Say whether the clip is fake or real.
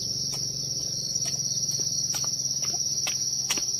real